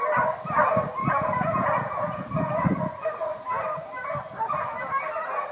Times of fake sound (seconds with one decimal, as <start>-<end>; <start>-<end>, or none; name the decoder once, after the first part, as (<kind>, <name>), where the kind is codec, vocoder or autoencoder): 1.0-2.8 (vocoder, Vocos)